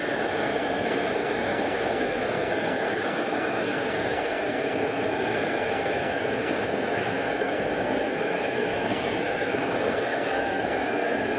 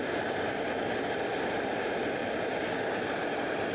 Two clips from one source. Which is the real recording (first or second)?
second